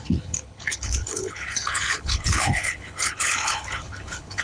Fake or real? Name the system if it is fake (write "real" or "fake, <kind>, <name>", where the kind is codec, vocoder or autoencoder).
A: fake, codec, HILCodec